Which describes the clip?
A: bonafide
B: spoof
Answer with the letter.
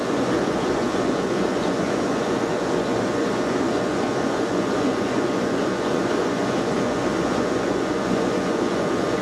B